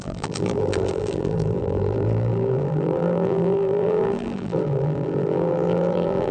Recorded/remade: remade